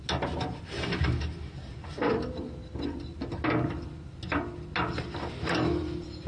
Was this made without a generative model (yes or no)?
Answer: yes